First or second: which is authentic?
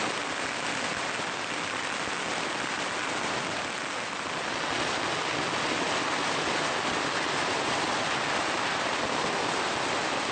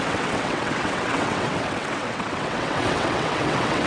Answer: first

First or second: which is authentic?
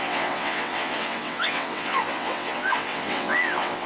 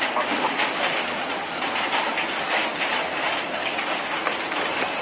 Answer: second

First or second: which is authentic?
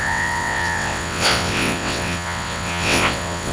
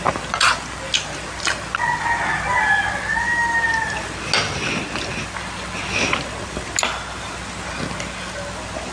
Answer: second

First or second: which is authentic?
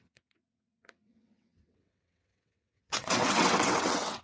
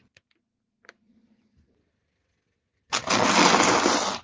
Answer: second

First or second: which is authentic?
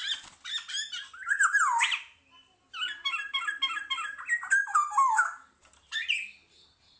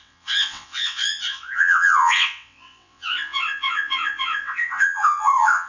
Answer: first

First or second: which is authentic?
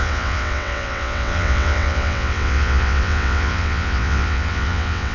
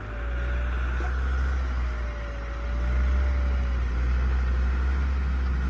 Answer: second